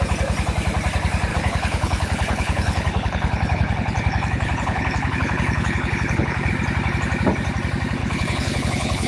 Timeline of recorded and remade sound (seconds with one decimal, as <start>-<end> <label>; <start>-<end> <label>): 0.0-1.3 recorded; 1.3-6.5 remade; 6.5-8.0 recorded; 8.0-9.1 remade